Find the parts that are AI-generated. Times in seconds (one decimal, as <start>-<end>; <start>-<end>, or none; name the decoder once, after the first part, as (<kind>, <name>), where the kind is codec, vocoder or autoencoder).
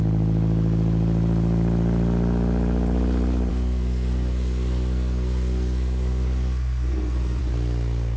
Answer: 3.5-7.4 (codec, SNAC)